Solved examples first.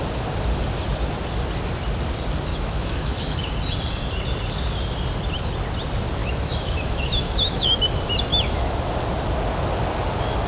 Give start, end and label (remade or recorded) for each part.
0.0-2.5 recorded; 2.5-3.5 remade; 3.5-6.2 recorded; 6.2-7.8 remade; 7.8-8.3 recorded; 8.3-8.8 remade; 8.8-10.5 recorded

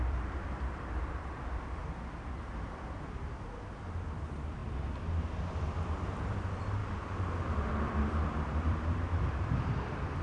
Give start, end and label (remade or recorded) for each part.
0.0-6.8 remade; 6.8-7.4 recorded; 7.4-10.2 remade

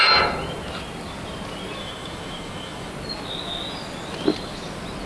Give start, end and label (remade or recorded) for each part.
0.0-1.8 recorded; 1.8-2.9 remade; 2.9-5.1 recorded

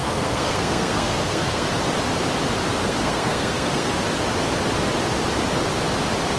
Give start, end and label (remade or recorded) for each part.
0.0-1.7 remade; 1.7-2.8 recorded; 2.8-3.9 remade; 3.9-6.4 recorded